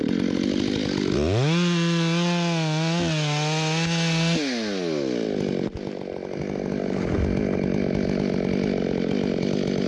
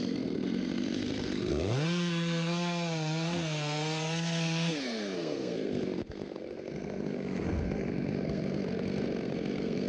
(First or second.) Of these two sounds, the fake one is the second